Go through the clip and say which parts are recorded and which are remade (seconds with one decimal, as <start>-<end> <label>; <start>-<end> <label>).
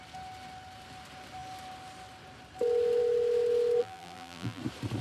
0.0-3.8 recorded; 3.8-4.6 remade; 4.6-5.0 recorded